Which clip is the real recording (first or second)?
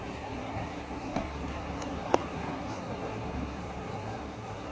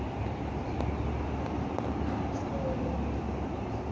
second